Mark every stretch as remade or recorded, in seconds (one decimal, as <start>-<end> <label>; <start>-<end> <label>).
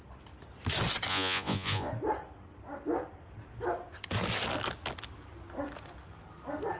0.0-1.1 recorded; 1.1-1.9 remade; 1.9-6.8 recorded